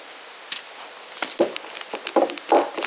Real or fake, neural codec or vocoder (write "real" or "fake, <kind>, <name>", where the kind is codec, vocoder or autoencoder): real